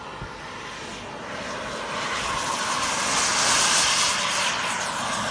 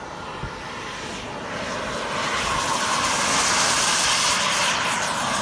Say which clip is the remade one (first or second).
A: second